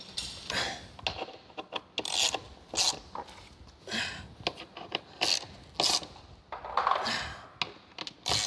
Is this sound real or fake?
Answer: real